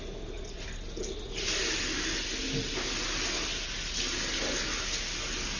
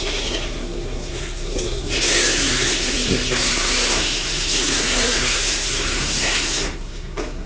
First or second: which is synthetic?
second